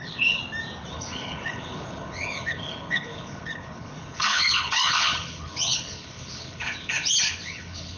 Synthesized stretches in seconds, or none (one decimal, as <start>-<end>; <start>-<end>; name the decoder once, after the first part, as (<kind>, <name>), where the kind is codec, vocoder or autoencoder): 0.0-0.4 (codec, HILCodec); 0.9-8.0